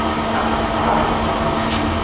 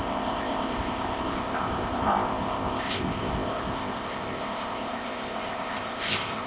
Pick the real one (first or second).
first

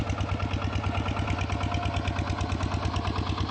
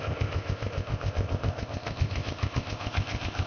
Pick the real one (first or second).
first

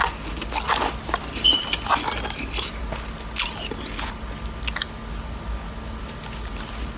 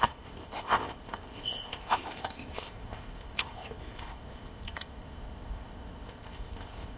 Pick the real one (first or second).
first